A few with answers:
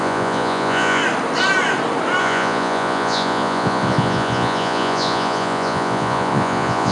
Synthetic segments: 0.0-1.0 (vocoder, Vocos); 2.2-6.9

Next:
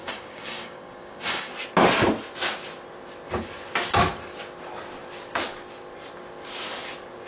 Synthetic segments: 0.0-1.5 (codec, DAC)

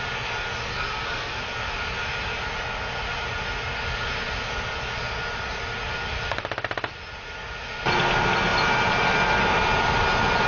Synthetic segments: 0.7-1.4 (codec, SNAC)

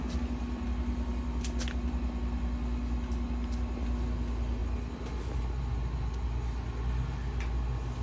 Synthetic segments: none

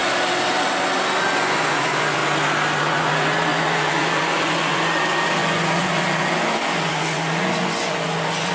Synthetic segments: 1.2-2.2 (vocoder, Vocos); 2.8-8.5

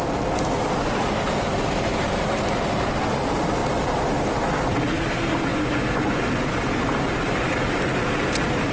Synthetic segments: 5.5-6.2 (vocoder, Vocos)

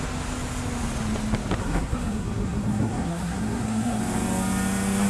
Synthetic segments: 1.6-4.0 (codec, SNAC)

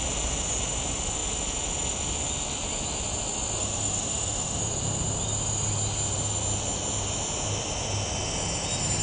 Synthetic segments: 3.6-4.6 (autoencoder, DAC-VAE)